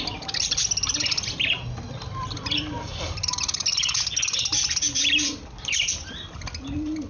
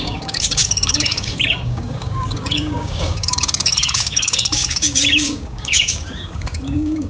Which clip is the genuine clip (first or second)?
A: first